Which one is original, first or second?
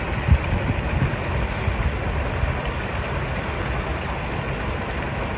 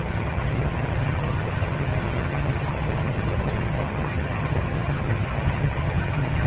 first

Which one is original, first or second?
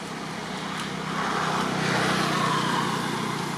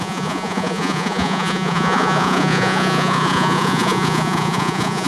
first